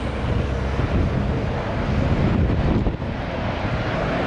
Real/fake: real